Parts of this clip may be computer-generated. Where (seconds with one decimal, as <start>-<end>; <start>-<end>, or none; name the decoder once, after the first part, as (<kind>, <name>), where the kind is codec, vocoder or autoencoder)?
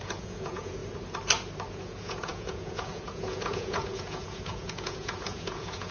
0.0-0.8 (vocoder, Vocos); 1.7-5.9